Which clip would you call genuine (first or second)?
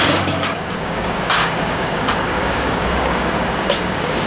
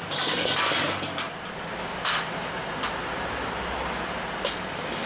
second